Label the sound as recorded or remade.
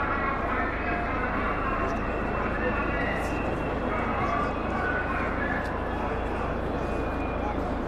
recorded